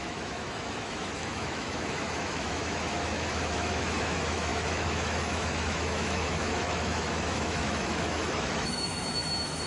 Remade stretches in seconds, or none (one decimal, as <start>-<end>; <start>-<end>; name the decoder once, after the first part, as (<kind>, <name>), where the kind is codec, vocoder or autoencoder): 0.0-9.7 (autoencoder, DAC-VAE)